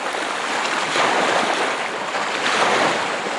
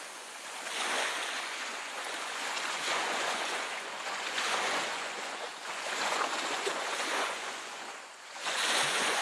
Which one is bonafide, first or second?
first